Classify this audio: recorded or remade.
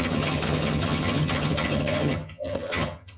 remade